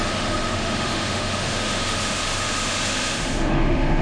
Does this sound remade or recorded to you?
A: remade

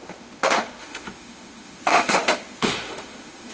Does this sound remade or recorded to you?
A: remade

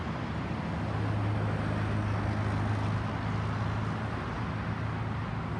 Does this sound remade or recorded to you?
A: recorded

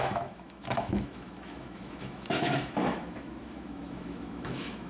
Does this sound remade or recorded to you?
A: remade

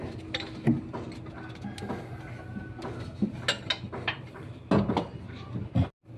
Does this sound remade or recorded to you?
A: recorded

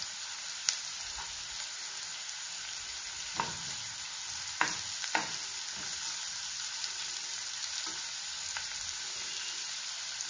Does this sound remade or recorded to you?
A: recorded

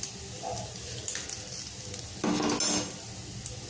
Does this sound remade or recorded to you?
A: recorded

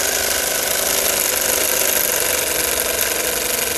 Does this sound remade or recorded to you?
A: recorded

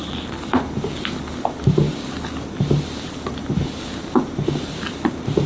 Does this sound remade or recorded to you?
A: recorded